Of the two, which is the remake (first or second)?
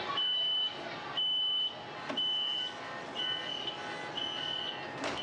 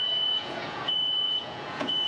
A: second